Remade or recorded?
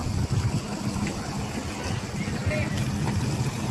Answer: recorded